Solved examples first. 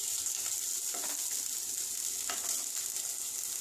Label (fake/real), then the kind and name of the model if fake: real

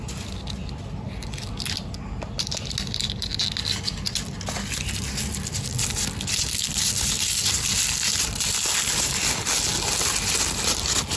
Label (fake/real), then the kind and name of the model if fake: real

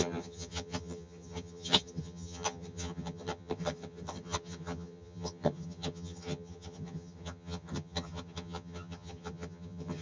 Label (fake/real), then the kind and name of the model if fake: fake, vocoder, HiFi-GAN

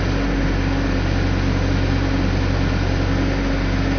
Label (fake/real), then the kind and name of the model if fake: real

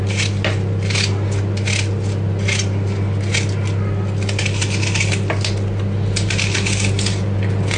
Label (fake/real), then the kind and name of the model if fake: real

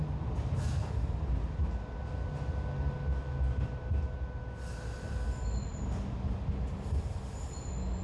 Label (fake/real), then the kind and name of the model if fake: real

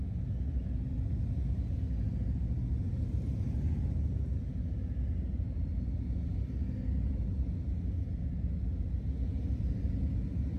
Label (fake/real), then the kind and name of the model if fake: real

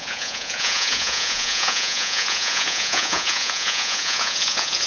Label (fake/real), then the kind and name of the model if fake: fake, vocoder, Vocos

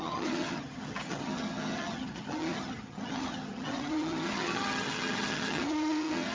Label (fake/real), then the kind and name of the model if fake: fake, vocoder, HiFi-GAN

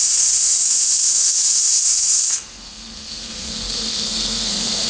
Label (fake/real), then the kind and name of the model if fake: fake, codec, SNAC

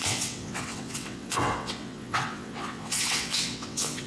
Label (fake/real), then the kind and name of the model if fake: fake, vocoder, WaveNeXt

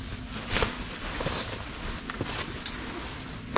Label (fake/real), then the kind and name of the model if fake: real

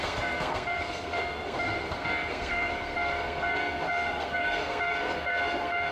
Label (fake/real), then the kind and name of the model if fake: fake, codec, SNAC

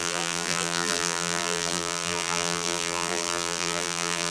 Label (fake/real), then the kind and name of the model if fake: fake, vocoder, BigVGAN v2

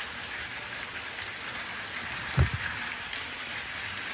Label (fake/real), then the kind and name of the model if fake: real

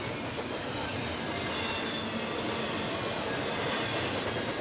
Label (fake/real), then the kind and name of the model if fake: real